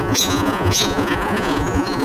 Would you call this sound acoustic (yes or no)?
no